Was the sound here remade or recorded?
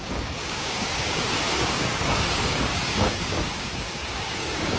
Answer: remade